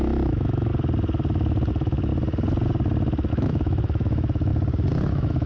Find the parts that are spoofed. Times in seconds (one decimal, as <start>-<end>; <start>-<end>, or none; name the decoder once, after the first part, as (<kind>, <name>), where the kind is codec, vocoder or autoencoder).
0.0-0.7 (autoencoder, DAC-VAE); 1.7-2.1; 3.3-4.5; 5.1-5.5